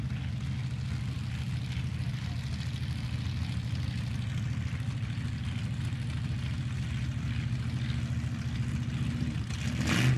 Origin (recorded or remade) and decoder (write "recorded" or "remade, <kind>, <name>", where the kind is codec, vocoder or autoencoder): recorded